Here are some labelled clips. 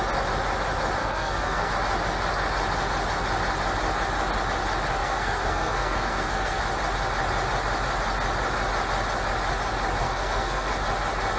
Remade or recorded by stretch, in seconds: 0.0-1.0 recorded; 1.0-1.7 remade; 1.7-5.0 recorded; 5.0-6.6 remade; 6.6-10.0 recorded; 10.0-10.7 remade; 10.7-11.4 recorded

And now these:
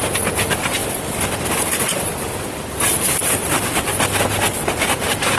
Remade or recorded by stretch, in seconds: 0.0-5.4 recorded

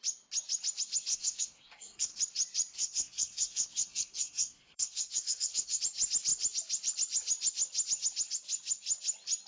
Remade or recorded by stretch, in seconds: 0.0-1.1 recorded; 1.1-2.2 remade; 2.2-2.7 recorded; 2.7-5.8 remade; 5.8-9.5 recorded

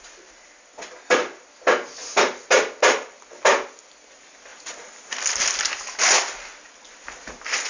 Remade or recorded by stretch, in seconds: 0.0-7.7 recorded

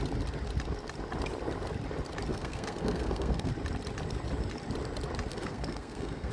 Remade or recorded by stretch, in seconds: 0.0-2.3 recorded; 2.3-3.5 remade; 3.5-5.3 recorded; 5.3-6.3 remade

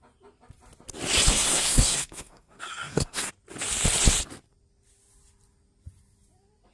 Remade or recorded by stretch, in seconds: 0.0-1.3 recorded; 1.3-3.3 remade; 3.3-6.7 recorded

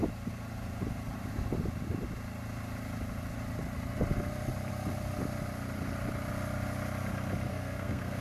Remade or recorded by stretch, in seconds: 0.0-7.5 recorded; 7.5-8.2 remade